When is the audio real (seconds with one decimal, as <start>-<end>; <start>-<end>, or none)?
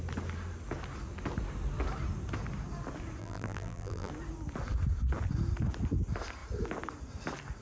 0.0-3.2; 4.1-7.6